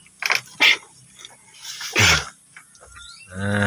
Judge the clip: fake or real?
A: real